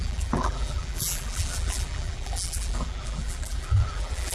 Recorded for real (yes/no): no